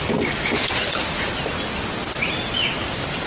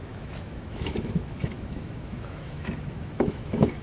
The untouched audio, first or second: first